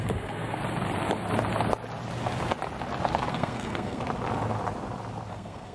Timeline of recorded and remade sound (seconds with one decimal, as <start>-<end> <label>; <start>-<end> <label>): 0.0-0.6 remade; 0.6-3.3 recorded; 3.3-4.0 remade; 4.0-5.3 recorded; 5.3-5.7 remade